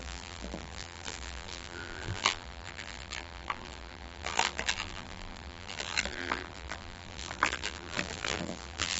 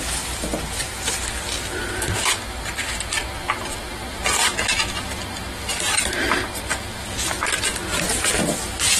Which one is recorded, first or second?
second